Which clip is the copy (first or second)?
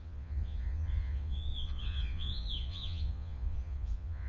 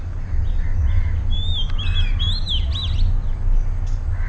first